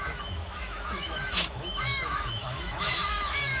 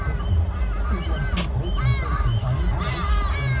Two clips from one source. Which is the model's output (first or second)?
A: first